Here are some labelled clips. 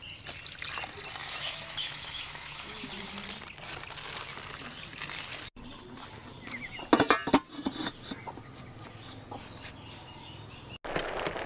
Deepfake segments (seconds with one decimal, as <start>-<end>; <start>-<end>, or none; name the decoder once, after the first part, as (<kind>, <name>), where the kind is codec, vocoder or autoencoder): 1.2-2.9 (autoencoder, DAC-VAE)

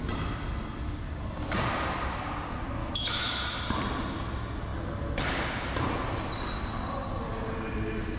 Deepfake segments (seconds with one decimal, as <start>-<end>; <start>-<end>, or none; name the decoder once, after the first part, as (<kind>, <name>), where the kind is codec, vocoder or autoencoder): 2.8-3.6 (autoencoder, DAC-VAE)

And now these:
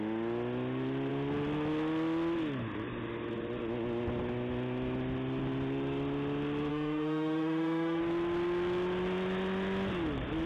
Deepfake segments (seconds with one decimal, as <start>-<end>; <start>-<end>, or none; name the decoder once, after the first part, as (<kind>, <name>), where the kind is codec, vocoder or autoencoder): 6.7-8.0 (autoencoder, DAC-VAE)